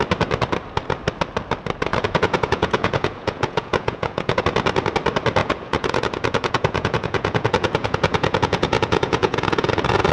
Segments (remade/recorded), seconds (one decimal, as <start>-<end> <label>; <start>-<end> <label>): 0.0-1.9 recorded; 1.9-4.4 remade; 4.4-5.4 recorded; 5.4-10.1 remade